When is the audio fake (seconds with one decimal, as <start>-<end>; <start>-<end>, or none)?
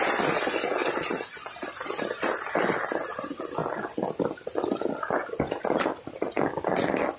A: none